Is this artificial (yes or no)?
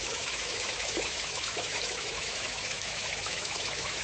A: yes